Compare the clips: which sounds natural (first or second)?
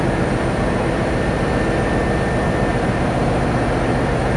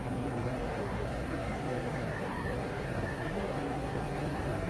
first